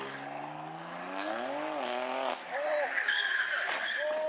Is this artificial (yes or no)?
no